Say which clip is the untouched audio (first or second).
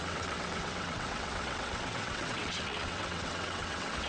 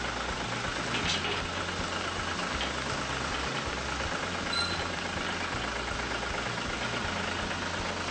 second